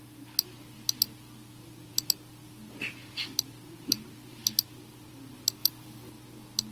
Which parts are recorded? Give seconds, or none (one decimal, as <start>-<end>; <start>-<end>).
0.0-5.6; 6.1-6.7